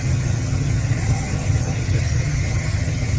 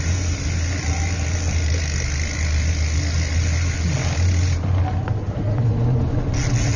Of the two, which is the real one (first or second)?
second